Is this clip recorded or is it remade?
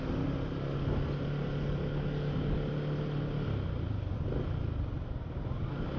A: recorded